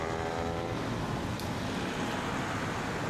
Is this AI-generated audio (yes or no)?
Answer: no